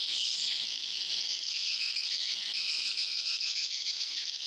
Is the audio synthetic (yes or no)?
yes